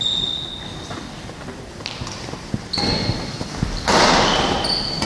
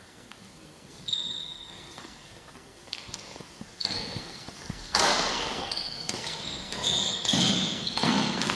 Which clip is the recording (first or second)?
first